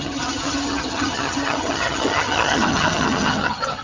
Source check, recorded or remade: remade